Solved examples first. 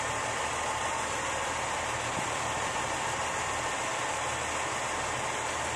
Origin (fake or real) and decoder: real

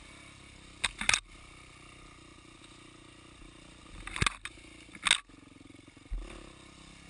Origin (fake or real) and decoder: real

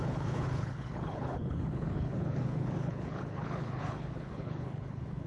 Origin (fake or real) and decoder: fake, codec, HILCodec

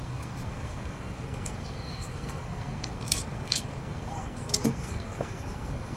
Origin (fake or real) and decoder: fake, codec, SNAC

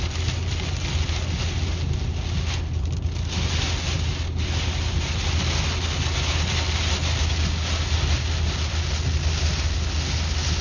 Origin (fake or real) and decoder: real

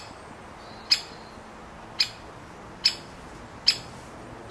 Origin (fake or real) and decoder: real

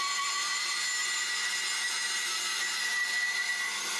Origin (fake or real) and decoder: real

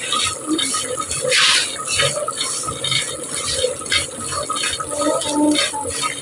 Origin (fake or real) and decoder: real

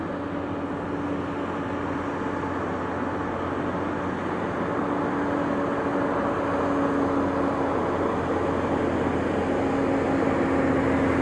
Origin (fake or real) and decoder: real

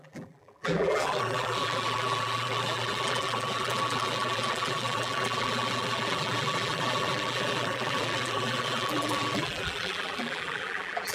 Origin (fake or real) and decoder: fake, vocoder, BigVGAN v2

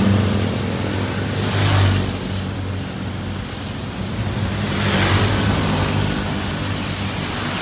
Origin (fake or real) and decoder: real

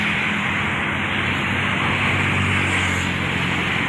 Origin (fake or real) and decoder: real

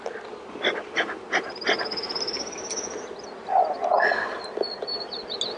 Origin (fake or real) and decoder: real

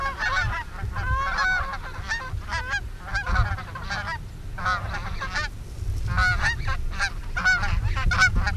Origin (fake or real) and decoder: real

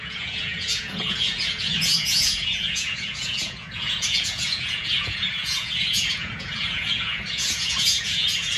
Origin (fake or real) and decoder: fake, vocoder, Vocos